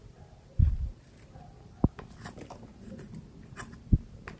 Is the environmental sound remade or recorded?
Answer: recorded